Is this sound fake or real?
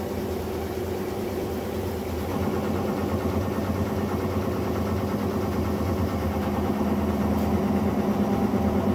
real